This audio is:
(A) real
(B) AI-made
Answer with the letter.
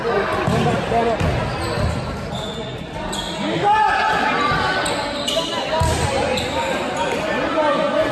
A